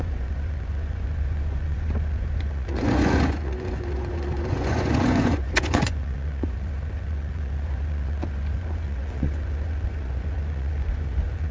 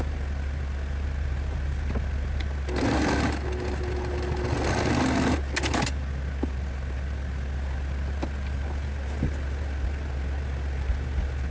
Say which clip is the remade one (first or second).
first